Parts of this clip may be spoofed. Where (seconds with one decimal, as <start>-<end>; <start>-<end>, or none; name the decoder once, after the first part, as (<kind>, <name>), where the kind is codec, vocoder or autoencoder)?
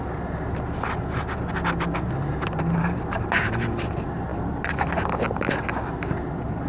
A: none